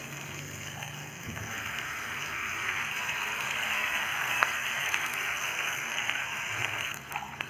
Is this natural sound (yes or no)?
no